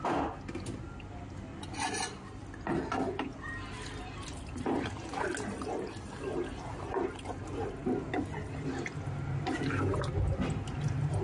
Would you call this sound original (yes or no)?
yes